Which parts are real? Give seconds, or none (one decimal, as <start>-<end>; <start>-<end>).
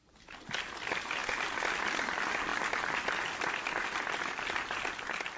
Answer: 0.0-5.4